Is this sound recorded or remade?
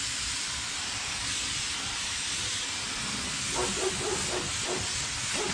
recorded